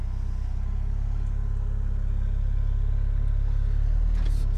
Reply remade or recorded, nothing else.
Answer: recorded